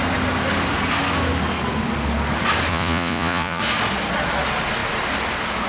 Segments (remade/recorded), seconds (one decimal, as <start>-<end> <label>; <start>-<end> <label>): 0.0-2.7 recorded; 2.7-3.6 remade; 3.6-5.7 recorded